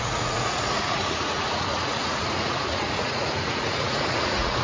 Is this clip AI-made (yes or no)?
yes